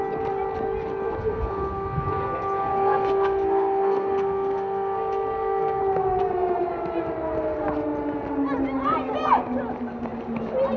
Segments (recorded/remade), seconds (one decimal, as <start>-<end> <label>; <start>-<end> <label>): 0.0-1.2 recorded; 1.2-5.8 remade; 5.8-10.8 recorded